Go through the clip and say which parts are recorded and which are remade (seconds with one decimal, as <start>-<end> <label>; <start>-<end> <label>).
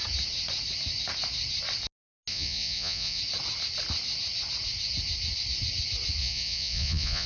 0.0-2.3 recorded; 2.3-3.2 remade; 3.2-6.2 recorded; 6.2-7.3 remade